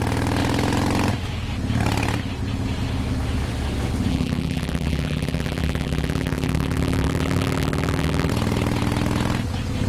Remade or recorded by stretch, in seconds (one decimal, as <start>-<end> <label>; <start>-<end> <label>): 0.0-4.1 recorded; 4.1-8.3 remade; 8.3-9.9 recorded